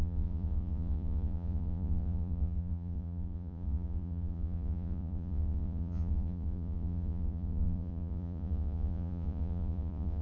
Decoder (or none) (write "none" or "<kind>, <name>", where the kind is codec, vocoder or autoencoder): vocoder, Vocos